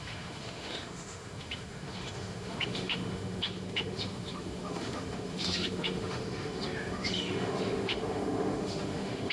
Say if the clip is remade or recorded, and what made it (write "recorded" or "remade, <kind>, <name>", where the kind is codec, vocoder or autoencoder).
remade, autoencoder, DAC-VAE